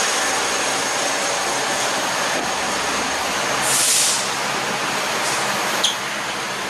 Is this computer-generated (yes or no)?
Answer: yes